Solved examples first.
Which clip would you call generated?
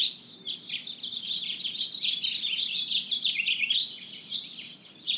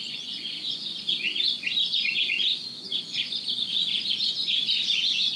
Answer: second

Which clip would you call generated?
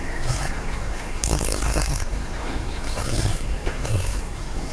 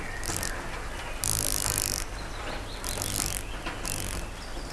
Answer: first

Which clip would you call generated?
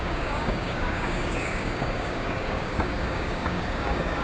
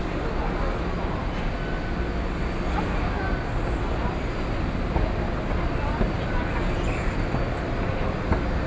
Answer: first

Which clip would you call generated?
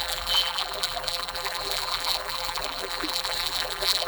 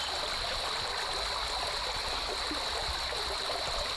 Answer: first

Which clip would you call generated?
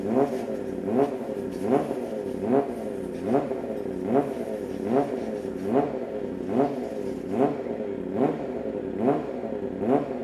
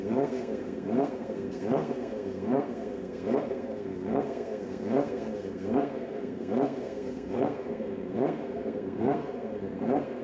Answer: second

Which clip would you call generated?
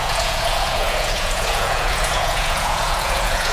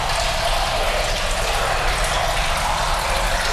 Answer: first